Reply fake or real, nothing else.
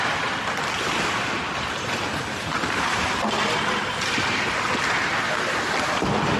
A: real